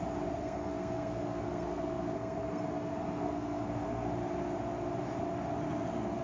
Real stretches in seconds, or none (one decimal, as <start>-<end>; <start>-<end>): 0.0-0.4; 4.1-6.2